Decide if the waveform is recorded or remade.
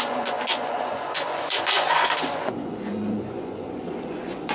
remade